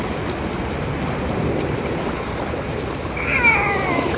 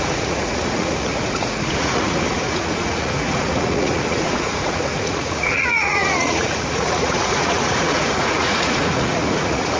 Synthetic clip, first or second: second